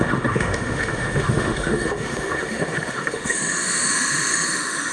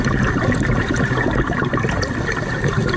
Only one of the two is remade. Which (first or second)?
first